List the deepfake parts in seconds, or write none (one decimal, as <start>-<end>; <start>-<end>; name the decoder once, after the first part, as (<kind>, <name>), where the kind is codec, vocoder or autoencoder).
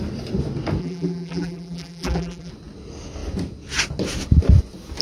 0.8-2.5 (vocoder, BigVGAN v2)